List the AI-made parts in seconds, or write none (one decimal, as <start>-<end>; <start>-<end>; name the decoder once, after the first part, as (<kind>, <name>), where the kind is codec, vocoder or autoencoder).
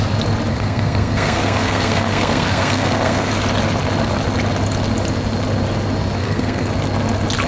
0.5-3.3 (codec, SNAC); 6.2-6.7